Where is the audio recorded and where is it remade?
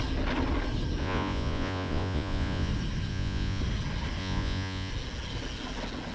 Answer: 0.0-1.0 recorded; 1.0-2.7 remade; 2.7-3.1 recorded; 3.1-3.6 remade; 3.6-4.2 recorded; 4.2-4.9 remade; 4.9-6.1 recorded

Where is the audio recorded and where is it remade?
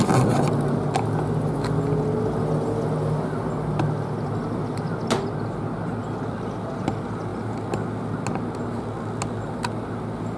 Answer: 0.0-10.4 recorded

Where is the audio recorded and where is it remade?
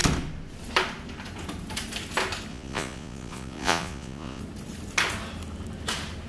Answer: 0.0-2.5 recorded; 2.5-4.4 remade; 4.4-6.3 recorded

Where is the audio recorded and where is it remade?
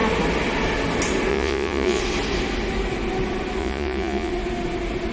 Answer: 0.0-1.3 recorded; 1.3-2.0 remade; 2.0-3.6 recorded; 3.6-4.3 remade; 4.3-5.1 recorded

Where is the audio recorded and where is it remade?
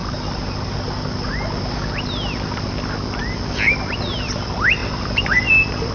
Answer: 0.0-5.9 recorded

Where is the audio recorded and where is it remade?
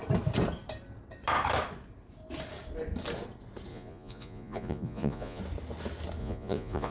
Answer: 0.0-3.7 recorded; 3.7-5.4 remade; 5.4-6.2 recorded; 6.2-6.9 remade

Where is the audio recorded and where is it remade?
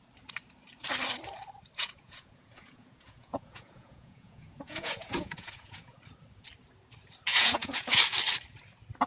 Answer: 0.0-1.8 recorded; 1.8-6.0 remade; 6.0-7.3 recorded; 7.3-8.0 remade; 8.0-9.1 recorded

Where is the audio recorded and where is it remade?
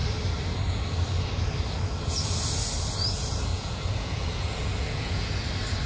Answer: 0.0-3.5 recorded; 3.5-5.4 remade; 5.4-5.9 recorded